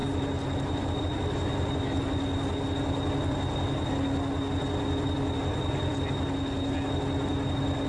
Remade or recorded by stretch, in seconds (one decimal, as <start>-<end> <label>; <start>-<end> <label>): 0.0-7.9 recorded